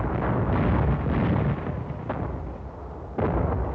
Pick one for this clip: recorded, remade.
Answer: recorded